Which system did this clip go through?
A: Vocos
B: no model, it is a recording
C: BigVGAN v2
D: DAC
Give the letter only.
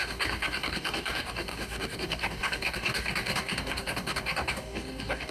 D